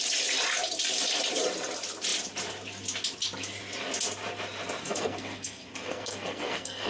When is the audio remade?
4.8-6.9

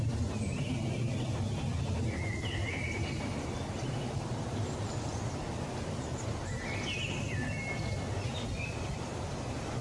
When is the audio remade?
none

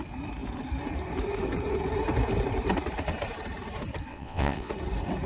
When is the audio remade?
4.1-4.7

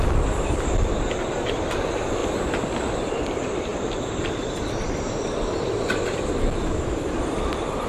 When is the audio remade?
0.0-2.2; 3.0-7.9

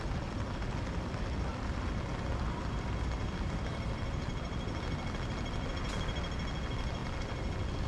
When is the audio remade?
1.5-4.8

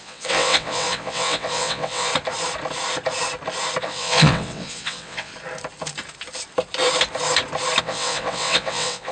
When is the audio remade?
0.0-2.1; 3.8-5.3; 7.8-9.1

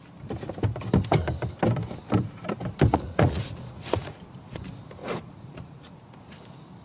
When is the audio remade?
2.9-4.2; 5.0-6.2